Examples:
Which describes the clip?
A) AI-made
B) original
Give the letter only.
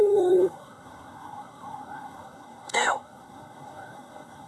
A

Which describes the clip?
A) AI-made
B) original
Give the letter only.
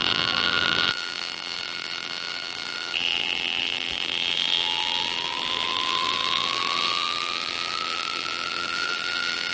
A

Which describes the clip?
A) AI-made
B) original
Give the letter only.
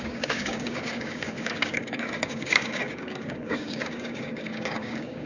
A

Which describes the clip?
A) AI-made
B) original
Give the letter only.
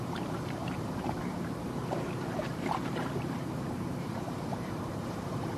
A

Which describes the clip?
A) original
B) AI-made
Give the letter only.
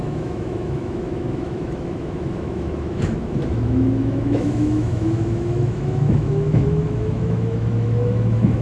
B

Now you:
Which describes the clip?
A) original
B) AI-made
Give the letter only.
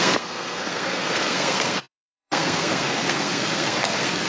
B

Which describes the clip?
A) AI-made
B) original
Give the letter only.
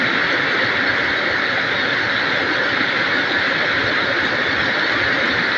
B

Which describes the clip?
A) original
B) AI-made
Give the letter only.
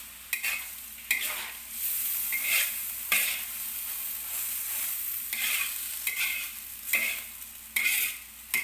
A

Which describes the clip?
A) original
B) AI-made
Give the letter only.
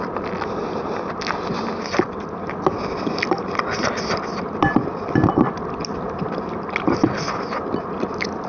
A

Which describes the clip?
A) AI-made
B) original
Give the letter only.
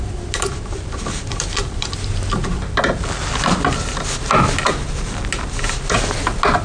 B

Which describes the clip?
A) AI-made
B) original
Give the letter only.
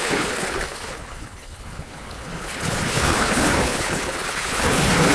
A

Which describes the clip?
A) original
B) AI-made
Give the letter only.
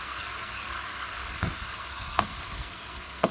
B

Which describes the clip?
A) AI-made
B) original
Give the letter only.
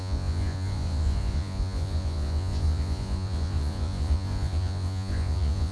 A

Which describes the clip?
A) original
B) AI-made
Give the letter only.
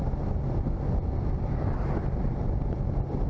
A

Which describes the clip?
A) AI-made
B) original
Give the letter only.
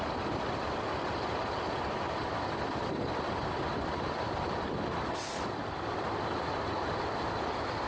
B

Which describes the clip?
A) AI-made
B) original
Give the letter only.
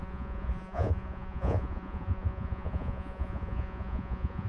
A